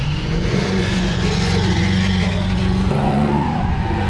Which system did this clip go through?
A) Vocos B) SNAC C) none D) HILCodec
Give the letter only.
A